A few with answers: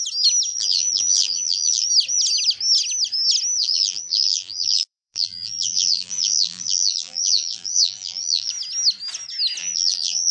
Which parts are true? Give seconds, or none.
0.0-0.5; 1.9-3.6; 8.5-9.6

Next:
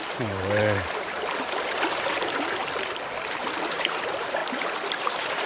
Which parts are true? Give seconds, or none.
0.6-3.4; 4.4-5.0

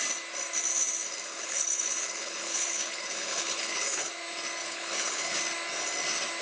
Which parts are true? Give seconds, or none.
0.0-1.3; 4.1-4.6; 5.4-6.4

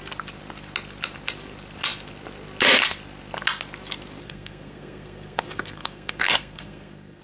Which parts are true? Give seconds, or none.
0.0-4.2

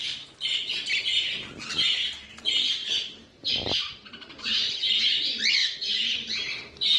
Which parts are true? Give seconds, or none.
0.7-2.8; 5.0-5.6

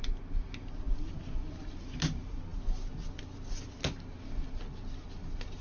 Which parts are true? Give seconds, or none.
0.0-5.6

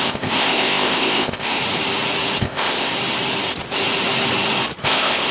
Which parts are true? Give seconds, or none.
1.6-2.4; 2.9-4.8